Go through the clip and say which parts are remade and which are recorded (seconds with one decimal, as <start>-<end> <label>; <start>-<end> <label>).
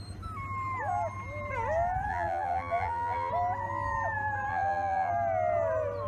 0.0-2.1 recorded; 2.1-3.3 remade; 3.3-4.5 recorded; 4.5-5.1 remade; 5.1-6.1 recorded